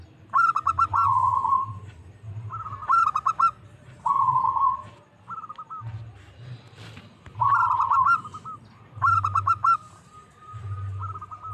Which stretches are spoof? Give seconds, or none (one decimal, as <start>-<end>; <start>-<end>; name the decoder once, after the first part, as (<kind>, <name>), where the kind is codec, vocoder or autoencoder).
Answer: 0.9-5.5 (vocoder, BigVGAN v2); 9.6-10.6